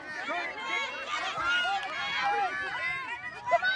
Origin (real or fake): real